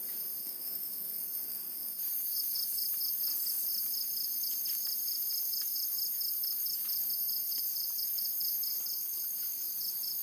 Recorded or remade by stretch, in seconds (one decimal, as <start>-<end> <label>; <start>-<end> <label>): 0.0-0.4 recorded; 0.4-1.9 remade; 1.9-10.2 recorded